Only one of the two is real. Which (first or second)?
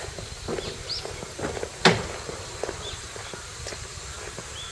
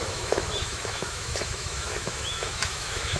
first